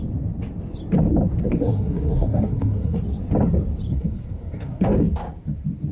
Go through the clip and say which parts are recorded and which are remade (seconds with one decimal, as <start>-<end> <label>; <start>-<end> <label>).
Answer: 0.0-1.4 recorded; 1.4-3.0 remade; 3.0-3.9 recorded; 3.9-5.0 remade; 5.0-5.9 recorded